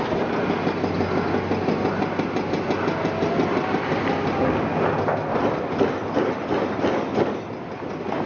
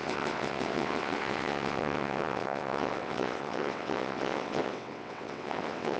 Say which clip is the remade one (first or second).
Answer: second